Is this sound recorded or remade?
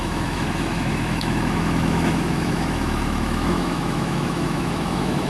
remade